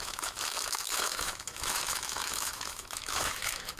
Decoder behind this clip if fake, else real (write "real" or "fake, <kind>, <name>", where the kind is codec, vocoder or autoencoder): fake, autoencoder, DAC-VAE